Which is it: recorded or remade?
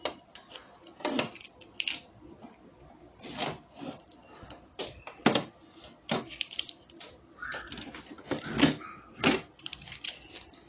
recorded